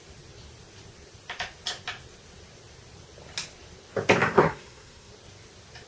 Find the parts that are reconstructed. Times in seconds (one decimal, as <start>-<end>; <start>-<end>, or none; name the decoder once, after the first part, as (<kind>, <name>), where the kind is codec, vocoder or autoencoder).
4.2-5.1 (codec, SNAC)